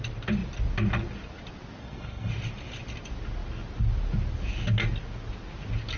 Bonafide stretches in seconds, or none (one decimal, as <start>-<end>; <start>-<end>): 0.0-1.8; 2.3-6.0